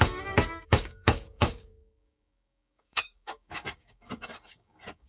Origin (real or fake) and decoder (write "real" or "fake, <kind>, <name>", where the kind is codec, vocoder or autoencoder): fake, codec, DAC